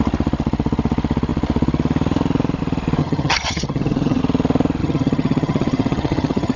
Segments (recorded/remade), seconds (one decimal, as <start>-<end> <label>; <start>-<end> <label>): 0.0-3.0 recorded; 3.0-4.2 remade; 4.2-4.8 recorded; 4.8-6.6 remade